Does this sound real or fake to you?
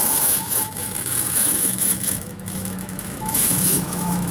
fake